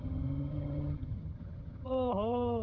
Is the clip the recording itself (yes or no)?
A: no